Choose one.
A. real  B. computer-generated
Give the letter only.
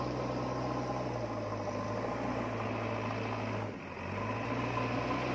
A